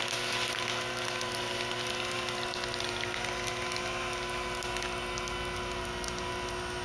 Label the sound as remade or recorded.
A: recorded